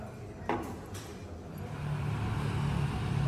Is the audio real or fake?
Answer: real